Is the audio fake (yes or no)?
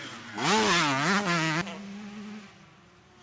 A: no